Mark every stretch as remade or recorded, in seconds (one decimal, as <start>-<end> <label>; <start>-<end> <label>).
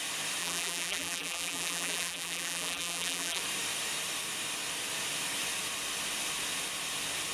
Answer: 0.0-0.4 recorded; 0.4-3.4 remade; 3.4-7.3 recorded